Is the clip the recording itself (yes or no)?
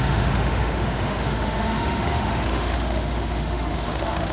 no